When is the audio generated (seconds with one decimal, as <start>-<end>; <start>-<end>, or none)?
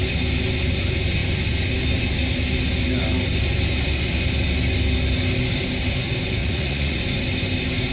6.4-7.0